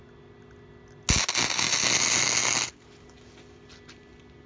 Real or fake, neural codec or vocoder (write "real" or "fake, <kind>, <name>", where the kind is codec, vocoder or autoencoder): real